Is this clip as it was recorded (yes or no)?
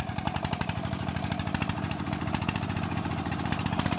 no